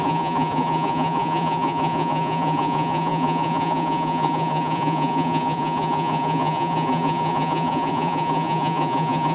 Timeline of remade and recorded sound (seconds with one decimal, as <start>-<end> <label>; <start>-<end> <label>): 0.0-9.3 remade